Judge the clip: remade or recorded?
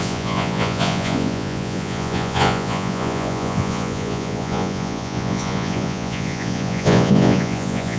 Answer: remade